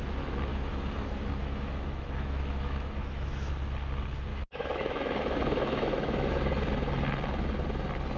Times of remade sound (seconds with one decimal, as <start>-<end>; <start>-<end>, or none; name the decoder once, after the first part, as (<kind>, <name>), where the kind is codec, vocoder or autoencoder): 0.5-3.5 (autoencoder, DAC-VAE); 4.3-6.3